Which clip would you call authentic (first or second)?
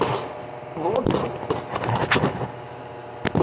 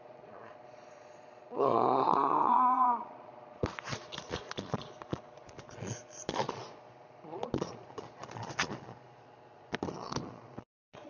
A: first